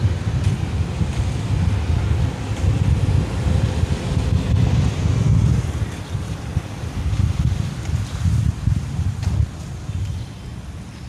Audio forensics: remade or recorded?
recorded